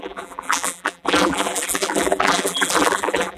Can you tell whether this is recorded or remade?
remade